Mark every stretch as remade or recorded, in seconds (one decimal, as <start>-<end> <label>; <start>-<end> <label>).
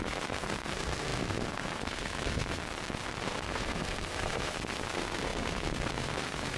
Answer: 0.0-2.6 remade; 2.6-3.2 recorded; 3.2-6.6 remade